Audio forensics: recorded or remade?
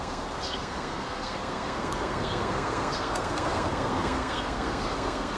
remade